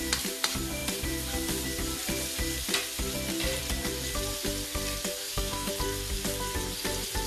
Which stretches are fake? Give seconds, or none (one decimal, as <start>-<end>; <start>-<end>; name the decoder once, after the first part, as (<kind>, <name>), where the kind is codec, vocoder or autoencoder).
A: 5.2-5.7 (codec, SNAC)

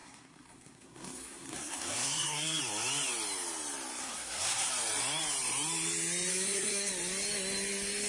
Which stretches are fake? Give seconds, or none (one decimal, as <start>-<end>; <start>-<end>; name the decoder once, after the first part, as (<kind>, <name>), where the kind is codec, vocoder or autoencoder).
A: 0.0-2.6 (codec, SNAC); 4.0-4.7; 6.3-6.9

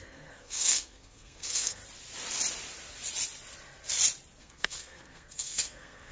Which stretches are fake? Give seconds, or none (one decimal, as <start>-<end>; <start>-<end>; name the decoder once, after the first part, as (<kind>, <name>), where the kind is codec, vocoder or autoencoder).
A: 0.0-1.8 (codec, SNAC); 4.4-6.1